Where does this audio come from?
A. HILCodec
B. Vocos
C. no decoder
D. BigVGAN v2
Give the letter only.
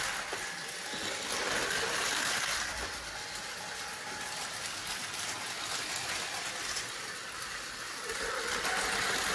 C